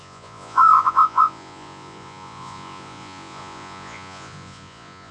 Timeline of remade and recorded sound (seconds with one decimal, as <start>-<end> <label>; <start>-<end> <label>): 0.0-5.1 remade